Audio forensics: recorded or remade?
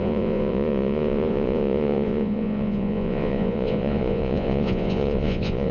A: remade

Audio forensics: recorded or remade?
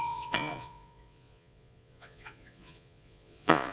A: remade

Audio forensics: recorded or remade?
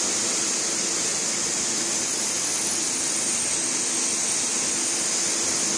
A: recorded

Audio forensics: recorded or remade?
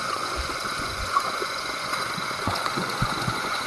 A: remade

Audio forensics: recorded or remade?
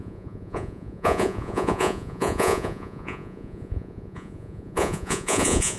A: remade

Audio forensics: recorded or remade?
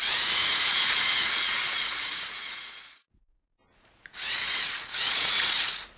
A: remade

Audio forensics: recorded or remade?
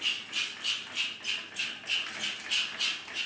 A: recorded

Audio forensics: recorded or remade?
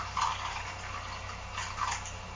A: recorded